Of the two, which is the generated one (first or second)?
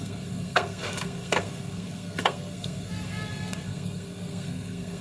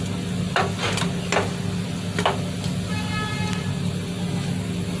first